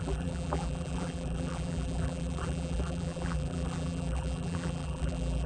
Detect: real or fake fake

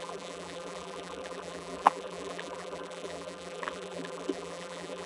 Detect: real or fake fake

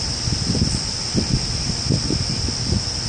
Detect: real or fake fake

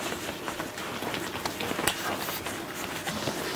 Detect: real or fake real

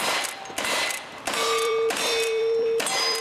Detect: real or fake fake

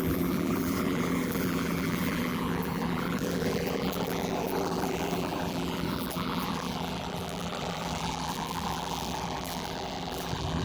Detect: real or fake fake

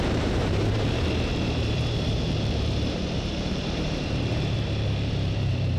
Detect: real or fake fake